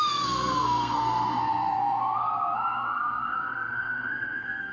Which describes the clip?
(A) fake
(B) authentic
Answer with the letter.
A